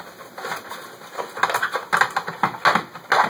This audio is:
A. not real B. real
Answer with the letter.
B